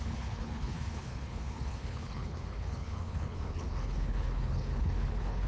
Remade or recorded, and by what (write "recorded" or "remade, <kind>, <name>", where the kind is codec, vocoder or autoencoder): remade, codec, HILCodec